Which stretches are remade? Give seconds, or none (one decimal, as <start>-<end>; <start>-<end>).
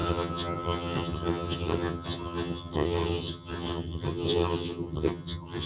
0.0-5.7